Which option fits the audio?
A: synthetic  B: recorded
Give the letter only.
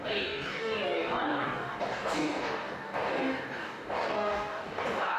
A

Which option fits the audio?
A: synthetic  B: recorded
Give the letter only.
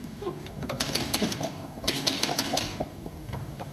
A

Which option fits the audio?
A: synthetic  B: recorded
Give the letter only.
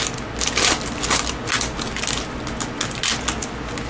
B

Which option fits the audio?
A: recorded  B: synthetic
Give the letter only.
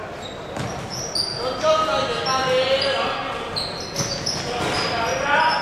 A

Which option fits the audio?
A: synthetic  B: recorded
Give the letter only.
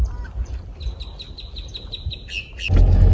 B